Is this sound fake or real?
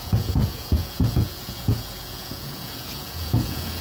fake